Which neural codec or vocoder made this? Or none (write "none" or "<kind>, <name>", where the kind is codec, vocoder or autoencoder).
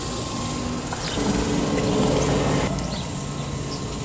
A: none